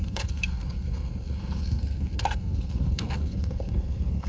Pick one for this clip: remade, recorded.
remade